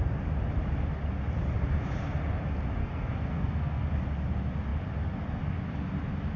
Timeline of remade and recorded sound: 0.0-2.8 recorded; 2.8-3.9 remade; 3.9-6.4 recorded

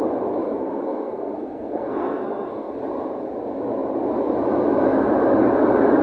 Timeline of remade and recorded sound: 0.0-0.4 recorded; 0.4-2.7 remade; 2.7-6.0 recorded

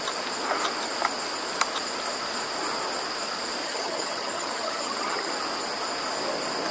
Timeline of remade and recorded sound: 0.0-3.6 recorded; 3.6-5.3 remade; 5.3-6.7 recorded

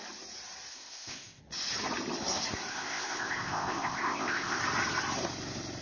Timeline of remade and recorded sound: 0.0-0.7 recorded; 0.7-1.4 remade; 1.4-2.7 recorded; 2.7-4.6 remade; 4.6-5.8 recorded